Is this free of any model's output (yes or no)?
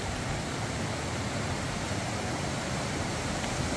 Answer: yes